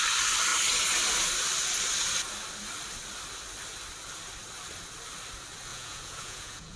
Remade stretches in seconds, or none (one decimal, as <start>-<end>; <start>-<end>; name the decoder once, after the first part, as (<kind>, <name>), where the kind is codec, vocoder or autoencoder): 5.7-6.8 (vocoder, Vocos)